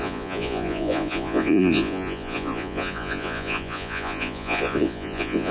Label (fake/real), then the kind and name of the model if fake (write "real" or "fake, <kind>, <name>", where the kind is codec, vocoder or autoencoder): fake, vocoder, Vocos